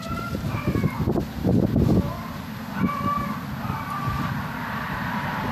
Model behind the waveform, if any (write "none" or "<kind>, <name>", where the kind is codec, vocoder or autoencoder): none